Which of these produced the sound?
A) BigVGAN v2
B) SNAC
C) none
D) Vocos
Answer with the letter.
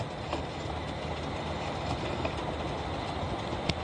C